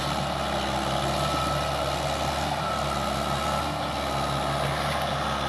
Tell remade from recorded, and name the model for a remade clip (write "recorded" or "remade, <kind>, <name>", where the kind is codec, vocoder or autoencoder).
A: recorded